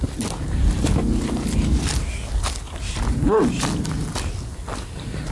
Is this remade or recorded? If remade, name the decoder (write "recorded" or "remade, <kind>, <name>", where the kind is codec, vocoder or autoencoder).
recorded